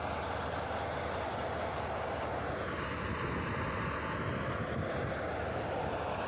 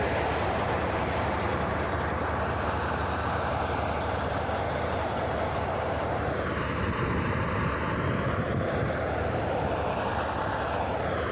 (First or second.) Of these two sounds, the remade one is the second